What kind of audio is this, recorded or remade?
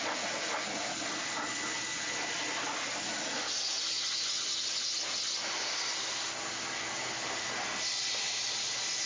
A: recorded